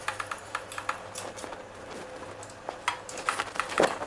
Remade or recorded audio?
recorded